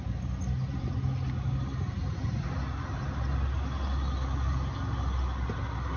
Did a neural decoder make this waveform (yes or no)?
no